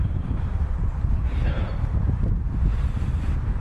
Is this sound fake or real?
fake